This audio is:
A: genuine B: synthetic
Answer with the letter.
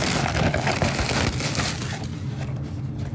A